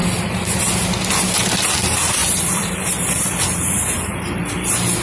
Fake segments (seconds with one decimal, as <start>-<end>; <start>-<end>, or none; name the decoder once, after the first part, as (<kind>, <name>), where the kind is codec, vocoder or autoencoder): 2.2-4.1 (vocoder, BigVGAN v2)